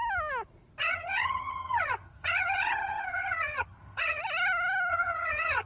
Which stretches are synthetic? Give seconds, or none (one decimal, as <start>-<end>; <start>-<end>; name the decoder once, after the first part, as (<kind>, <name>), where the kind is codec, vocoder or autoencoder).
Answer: 0.8-4.2 (vocoder, HiFi-GAN); 4.9-5.7